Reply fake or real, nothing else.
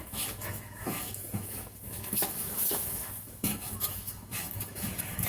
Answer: fake